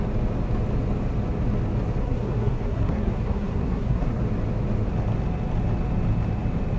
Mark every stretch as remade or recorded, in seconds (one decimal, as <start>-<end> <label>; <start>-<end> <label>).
0.0-2.0 recorded; 2.0-4.2 remade; 4.2-6.8 recorded